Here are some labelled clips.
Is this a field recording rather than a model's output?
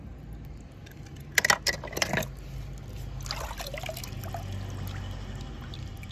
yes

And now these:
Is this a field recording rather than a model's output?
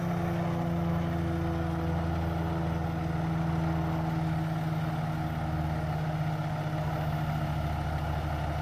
yes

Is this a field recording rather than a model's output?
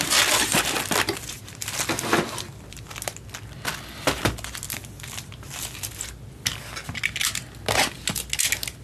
yes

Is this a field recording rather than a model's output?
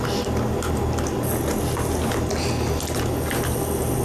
yes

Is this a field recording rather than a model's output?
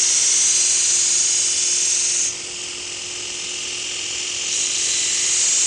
yes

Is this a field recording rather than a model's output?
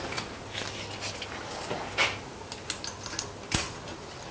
yes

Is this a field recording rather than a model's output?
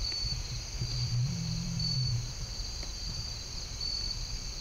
no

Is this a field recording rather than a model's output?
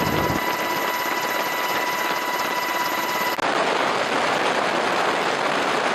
yes